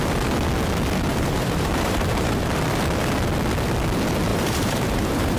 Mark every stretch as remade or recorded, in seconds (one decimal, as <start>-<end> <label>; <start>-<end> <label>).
0.0-1.1 recorded; 1.1-2.6 remade; 2.6-4.3 recorded; 4.3-5.4 remade